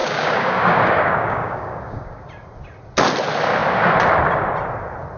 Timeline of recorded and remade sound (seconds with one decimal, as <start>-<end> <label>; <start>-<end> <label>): 0.0-2.2 remade; 2.2-5.2 recorded